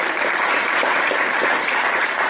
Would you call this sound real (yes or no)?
no